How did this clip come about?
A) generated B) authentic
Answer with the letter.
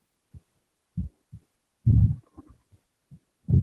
B